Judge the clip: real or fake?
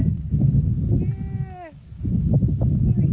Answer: real